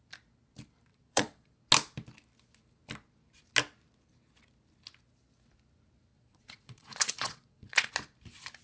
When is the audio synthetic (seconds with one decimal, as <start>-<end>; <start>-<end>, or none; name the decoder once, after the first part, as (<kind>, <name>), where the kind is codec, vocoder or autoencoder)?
0.9-1.6 (vocoder, Vocos); 6.1-7.9